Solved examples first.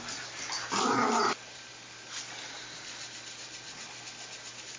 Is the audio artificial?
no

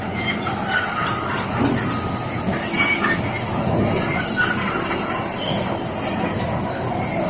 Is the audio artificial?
no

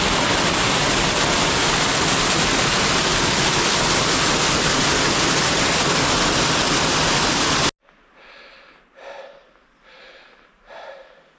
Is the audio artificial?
no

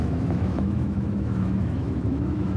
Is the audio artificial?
yes